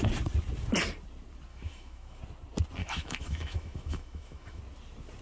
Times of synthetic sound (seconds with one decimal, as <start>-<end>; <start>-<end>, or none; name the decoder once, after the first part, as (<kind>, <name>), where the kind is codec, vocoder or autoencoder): 1.5-2.2 (autoencoder, DAC-VAE); 2.8-4.6